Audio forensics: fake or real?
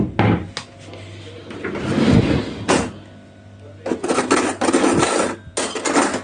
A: real